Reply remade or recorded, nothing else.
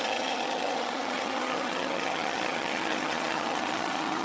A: remade